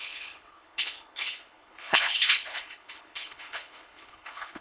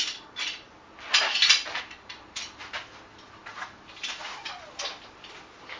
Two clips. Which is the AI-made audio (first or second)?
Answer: first